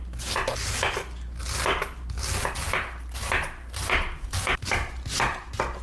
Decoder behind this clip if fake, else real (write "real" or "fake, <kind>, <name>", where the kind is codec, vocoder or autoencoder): real